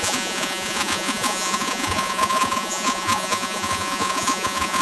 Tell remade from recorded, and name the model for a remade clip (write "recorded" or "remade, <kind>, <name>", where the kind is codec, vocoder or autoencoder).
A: remade, vocoder, Vocos